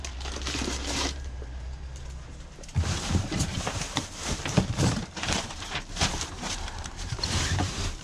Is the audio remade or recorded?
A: remade